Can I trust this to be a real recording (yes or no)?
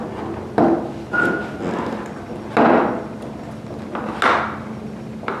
yes